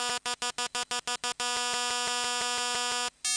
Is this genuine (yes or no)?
yes